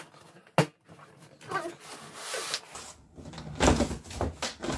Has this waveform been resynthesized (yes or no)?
no